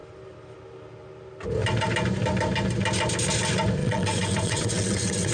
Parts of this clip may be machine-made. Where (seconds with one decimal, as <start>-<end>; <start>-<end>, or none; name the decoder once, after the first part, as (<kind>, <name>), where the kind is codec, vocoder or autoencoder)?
3.8-5.3 (vocoder, WaveNeXt)